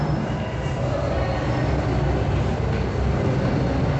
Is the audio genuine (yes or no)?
yes